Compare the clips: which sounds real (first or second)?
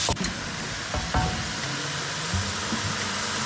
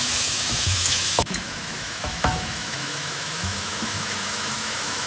first